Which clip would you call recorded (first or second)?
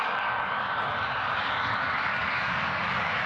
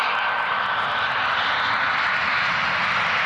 second